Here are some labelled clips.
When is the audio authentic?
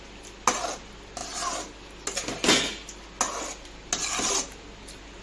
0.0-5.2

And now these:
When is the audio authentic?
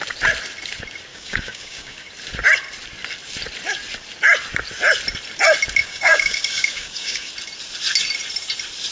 0.0-1.1; 2.1-5.8; 7.3-8.9